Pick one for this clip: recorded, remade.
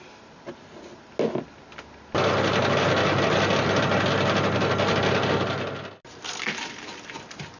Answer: recorded